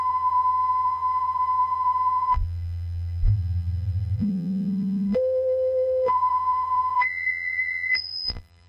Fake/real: fake